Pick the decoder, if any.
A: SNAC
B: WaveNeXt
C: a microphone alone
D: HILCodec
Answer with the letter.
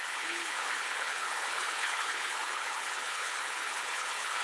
D